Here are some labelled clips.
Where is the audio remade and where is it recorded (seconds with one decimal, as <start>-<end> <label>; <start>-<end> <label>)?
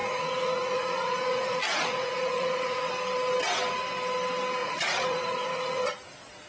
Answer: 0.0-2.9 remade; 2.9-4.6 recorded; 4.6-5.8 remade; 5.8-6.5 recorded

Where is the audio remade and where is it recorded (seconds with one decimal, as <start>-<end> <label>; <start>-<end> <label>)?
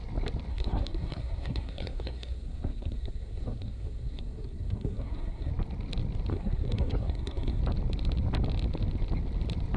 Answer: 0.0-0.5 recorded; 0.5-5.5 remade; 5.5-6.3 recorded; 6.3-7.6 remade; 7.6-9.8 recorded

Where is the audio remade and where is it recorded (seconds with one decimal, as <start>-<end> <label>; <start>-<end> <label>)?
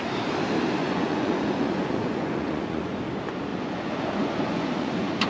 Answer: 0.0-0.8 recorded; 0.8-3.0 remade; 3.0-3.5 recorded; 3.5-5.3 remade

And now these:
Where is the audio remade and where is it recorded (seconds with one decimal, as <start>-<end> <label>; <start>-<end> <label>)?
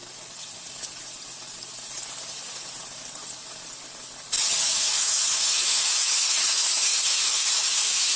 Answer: 0.0-4.6 recorded; 4.6-8.2 remade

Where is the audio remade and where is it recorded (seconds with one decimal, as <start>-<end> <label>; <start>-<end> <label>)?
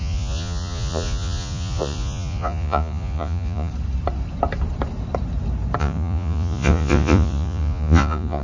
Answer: 0.0-3.7 remade; 3.7-5.8 recorded; 5.8-8.4 remade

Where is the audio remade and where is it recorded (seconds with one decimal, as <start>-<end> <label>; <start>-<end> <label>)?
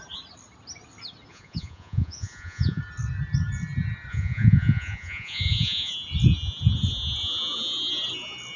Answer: 0.0-1.3 recorded; 1.3-2.8 remade; 2.8-4.1 recorded; 4.1-5.9 remade; 5.9-8.6 recorded